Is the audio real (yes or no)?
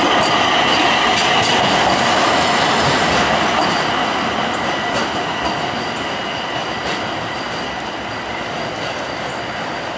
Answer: yes